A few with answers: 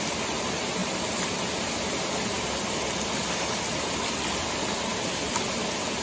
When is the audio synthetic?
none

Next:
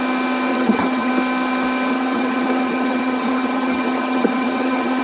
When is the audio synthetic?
0.5-1.1; 1.9-5.0

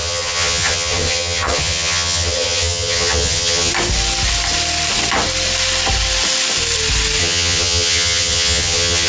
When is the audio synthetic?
0.0-3.7; 7.2-9.1

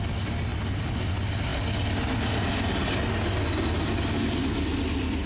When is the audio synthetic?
none

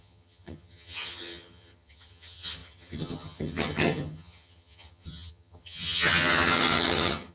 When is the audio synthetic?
0.0-7.3

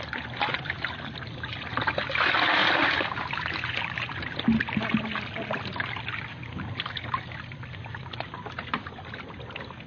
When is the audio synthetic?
none

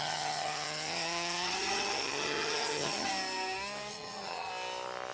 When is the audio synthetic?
0.0-3.1; 3.9-4.5

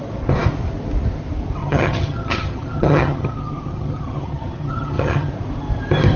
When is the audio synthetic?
1.6-5.3